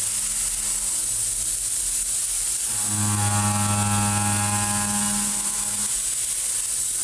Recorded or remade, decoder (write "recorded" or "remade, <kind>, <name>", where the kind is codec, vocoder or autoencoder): recorded